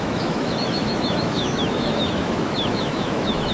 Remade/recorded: remade